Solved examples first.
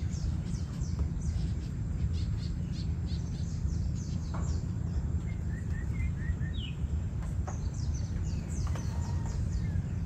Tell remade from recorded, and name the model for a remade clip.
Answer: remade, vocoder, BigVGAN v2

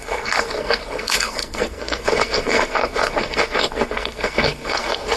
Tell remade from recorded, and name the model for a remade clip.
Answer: remade, codec, SNAC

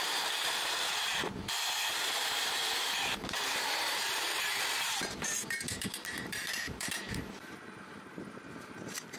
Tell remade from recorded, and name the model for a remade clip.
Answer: remade, vocoder, BigVGAN v2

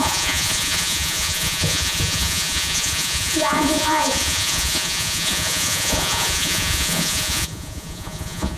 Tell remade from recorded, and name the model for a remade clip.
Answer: remade, vocoder, Vocos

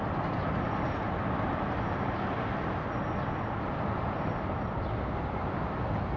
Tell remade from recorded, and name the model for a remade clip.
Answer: recorded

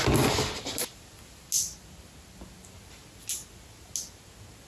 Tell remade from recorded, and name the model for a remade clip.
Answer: recorded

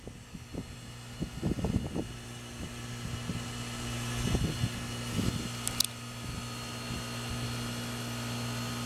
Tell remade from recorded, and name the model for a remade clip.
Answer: recorded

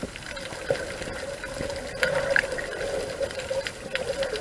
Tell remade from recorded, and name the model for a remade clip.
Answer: recorded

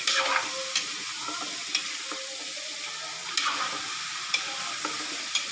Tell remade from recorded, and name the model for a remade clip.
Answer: recorded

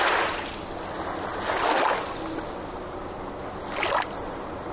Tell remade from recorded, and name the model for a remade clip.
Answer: recorded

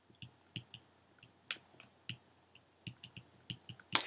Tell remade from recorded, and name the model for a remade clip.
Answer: recorded